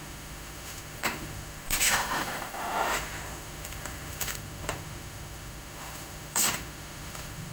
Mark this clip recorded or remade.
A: remade